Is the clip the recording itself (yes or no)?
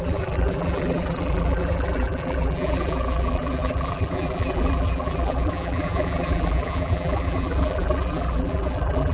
no